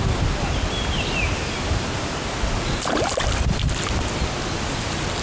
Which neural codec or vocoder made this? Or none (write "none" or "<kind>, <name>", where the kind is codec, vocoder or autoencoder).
none